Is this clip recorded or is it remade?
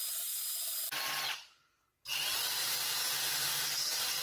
recorded